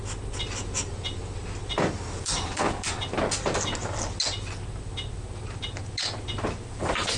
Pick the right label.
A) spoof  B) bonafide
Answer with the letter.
B